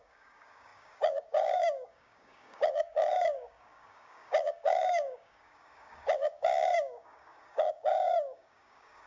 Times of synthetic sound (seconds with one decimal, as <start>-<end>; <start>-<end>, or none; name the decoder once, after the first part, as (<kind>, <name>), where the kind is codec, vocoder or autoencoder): 0.0-9.1 (codec, DAC)